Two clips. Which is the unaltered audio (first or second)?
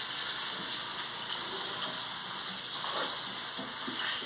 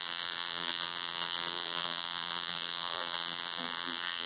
first